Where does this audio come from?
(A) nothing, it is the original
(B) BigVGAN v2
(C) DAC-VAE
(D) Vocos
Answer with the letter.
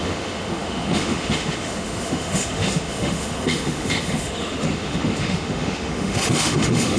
C